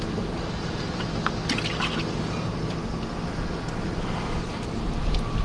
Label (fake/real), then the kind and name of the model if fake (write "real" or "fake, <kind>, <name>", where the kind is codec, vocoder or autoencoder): real